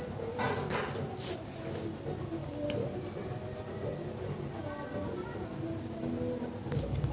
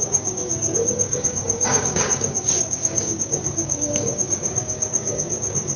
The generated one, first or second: second